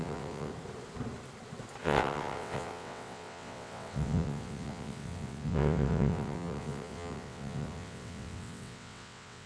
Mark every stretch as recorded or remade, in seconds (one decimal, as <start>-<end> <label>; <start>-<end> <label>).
0.0-0.5 remade; 0.5-1.8 recorded; 1.8-9.5 remade